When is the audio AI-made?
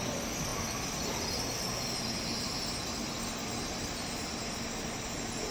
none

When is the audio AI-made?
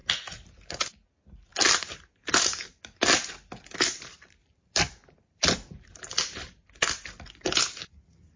0.0-0.5 (vocoder, BigVGAN v2); 1.5-3.3; 4.4-6.8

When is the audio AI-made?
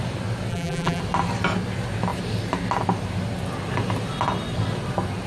0.5-1.0 (vocoder, BigVGAN v2)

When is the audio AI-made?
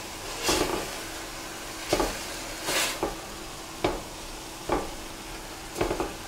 3.9-4.4 (vocoder, BigVGAN v2)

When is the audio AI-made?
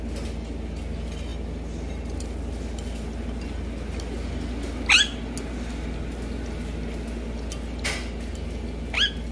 none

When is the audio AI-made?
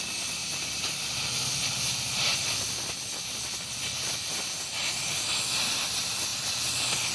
6.3-7.1 (vocoder, BigVGAN v2)